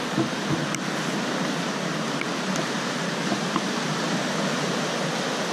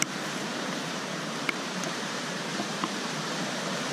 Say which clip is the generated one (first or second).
second